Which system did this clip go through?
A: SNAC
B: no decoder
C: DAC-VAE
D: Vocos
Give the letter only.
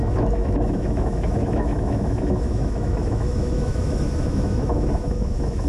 C